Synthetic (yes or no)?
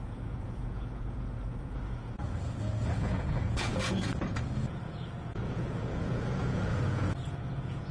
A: yes